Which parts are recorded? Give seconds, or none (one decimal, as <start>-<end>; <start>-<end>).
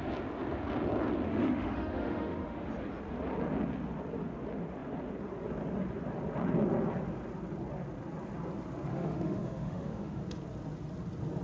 0.0-1.3; 2.7-8.9; 10.2-11.4